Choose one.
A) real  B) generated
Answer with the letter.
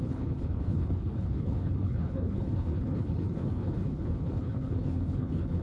B